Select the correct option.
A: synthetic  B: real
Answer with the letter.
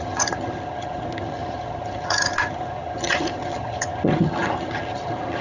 A